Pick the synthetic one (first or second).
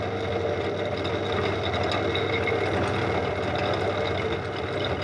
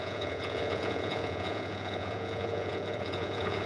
second